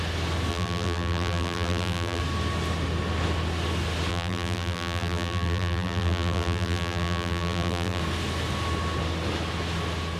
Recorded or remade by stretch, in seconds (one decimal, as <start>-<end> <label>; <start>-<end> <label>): 0.0-0.5 recorded; 0.5-2.2 remade; 2.2-4.1 recorded; 4.1-8.0 remade; 8.0-10.2 recorded